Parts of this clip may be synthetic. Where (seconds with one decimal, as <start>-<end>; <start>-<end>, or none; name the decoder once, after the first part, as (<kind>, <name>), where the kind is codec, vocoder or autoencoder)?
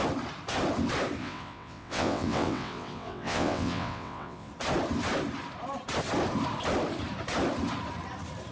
1.2-4.5 (vocoder, WaveNeXt)